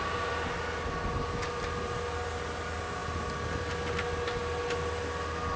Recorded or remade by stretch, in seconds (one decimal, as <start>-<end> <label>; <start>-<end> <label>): 0.0-5.6 recorded